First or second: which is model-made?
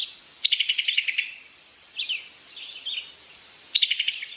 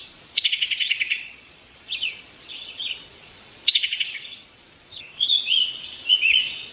second